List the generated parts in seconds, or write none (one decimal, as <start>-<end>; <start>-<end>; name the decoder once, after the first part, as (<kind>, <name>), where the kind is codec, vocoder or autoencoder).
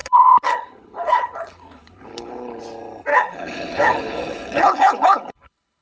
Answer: 0.0-2.6 (codec, HILCodec); 3.1-5.8